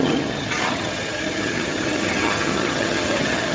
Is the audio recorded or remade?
remade